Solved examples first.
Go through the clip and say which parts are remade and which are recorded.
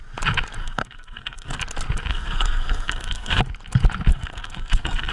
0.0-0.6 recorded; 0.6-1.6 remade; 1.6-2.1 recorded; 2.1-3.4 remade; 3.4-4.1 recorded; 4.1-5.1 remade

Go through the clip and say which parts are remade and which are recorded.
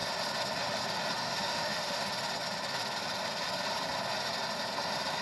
0.0-1.2 recorded; 1.2-2.0 remade; 2.0-5.2 recorded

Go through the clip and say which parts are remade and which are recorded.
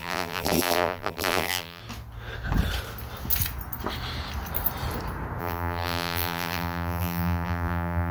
0.0-1.8 remade; 1.8-5.4 recorded; 5.4-8.1 remade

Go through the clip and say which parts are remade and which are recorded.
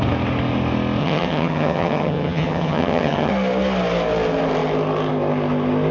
0.0-1.0 recorded; 1.0-3.3 remade; 3.3-5.9 recorded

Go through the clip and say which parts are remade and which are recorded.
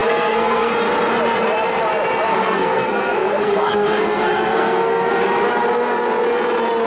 0.0-0.7 remade; 0.7-2.3 recorded; 2.3-5.1 remade; 5.1-6.9 recorded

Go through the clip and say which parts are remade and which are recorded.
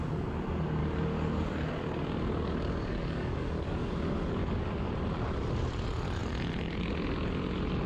0.0-0.8 recorded; 0.8-3.9 remade; 3.9-4.4 recorded; 4.4-4.9 remade; 4.9-7.9 recorded